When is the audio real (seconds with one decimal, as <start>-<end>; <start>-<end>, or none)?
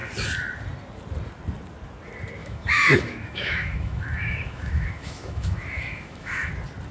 0.0-2.4; 6.5-6.9